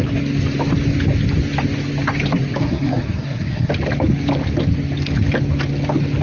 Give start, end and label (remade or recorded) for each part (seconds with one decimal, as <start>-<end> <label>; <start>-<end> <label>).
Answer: 0.0-2.6 recorded; 2.6-3.7 remade; 3.7-6.2 recorded